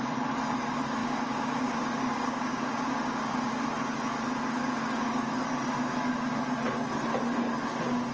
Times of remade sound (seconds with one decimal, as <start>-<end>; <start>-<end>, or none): 1.0-3.5; 4.6-5.3